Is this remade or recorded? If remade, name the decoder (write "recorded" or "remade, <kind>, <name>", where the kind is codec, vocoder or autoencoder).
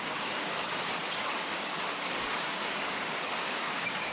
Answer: remade, codec, DAC